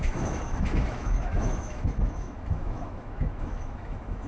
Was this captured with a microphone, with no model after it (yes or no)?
no